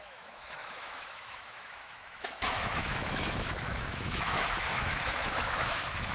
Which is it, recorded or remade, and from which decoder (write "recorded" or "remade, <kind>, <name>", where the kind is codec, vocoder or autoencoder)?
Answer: remade, autoencoder, DAC-VAE